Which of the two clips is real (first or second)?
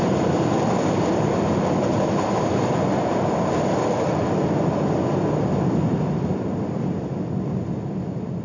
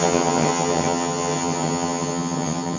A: first